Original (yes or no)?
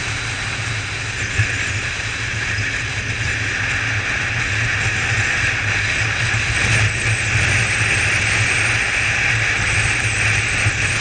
yes